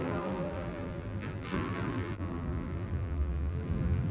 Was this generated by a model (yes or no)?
yes